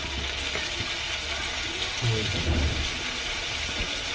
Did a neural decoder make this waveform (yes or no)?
no